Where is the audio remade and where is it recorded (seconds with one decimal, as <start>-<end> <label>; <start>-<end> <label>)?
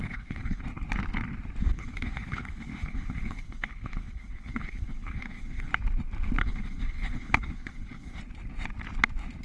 0.0-0.6 remade; 0.6-1.6 recorded; 1.6-5.7 remade; 5.7-6.4 recorded; 6.4-8.2 remade; 8.2-9.4 recorded